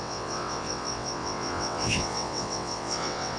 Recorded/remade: remade